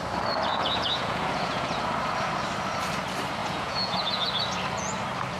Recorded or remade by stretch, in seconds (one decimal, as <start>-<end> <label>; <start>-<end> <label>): 0.0-0.5 recorded; 0.5-1.8 remade; 1.8-3.4 recorded; 3.4-4.3 remade; 4.3-5.4 recorded